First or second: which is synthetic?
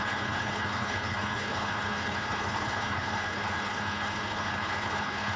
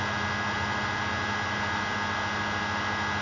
first